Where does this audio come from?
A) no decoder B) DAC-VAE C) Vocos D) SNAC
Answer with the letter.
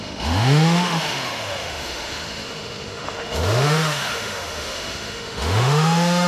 B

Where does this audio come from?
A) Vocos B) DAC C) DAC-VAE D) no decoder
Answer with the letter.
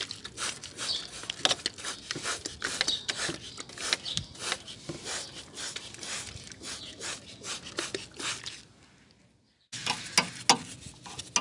D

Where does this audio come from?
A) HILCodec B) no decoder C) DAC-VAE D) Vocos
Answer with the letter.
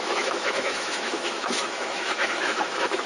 C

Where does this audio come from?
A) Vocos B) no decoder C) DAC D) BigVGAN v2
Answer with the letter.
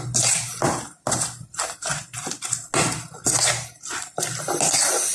B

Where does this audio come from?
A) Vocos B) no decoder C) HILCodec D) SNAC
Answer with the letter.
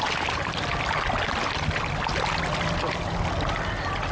B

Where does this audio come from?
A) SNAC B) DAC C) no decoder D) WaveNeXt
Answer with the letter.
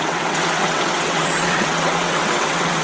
D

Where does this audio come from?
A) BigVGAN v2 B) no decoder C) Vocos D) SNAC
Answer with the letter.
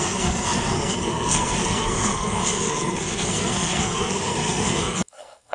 D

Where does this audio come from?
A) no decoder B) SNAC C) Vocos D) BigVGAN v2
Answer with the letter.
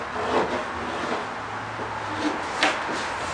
A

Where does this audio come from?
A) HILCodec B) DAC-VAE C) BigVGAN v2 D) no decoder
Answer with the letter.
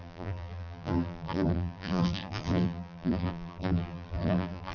C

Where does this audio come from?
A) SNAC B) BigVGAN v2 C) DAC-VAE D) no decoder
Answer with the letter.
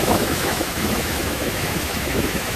C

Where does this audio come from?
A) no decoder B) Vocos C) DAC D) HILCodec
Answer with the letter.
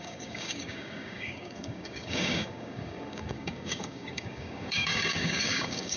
C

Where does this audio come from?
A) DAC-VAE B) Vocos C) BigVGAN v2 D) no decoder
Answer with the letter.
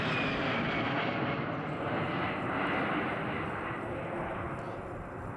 D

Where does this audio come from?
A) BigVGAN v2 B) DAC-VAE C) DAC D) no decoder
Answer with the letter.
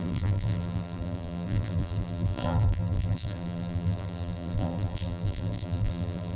A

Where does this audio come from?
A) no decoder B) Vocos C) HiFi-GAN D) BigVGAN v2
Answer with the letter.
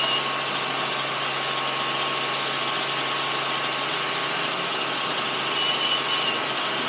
A